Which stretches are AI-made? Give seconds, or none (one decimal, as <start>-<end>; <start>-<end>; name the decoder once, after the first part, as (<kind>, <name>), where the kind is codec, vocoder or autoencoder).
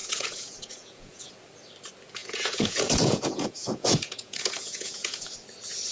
0.0-1.3 (vocoder, Vocos); 2.2-5.3